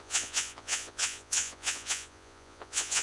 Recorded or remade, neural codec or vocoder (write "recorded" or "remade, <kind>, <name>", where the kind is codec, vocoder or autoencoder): remade, vocoder, Vocos